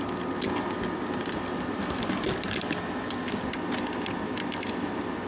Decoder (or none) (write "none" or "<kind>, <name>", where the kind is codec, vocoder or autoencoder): none